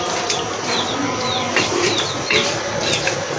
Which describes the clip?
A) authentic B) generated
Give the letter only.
A